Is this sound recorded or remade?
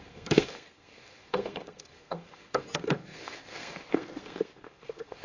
remade